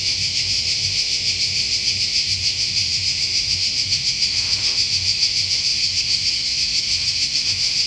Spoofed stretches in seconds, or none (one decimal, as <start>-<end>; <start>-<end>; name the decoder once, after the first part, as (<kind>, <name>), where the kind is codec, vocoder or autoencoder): 0.0-7.9 (autoencoder, DAC-VAE)